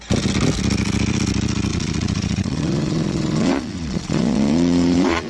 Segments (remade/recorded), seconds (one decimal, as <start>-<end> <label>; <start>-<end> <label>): 0.0-1.7 recorded; 1.7-5.3 remade